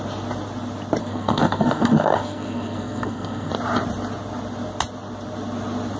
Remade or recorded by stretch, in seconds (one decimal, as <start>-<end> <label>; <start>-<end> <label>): 0.0-1.0 recorded; 1.0-3.5 remade; 3.5-6.0 recorded